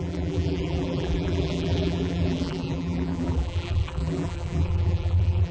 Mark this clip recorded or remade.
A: remade